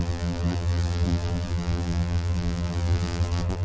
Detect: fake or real fake